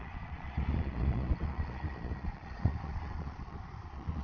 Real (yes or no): no